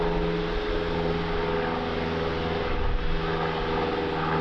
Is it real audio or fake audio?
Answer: real